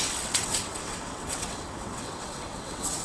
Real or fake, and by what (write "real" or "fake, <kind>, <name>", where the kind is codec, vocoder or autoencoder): fake, vocoder, WaveNeXt